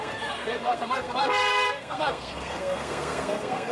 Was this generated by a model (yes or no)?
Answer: yes